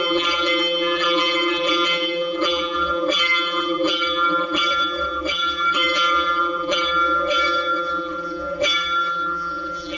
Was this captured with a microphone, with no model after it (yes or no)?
no